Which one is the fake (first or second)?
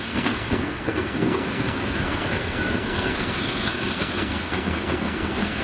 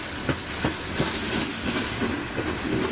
first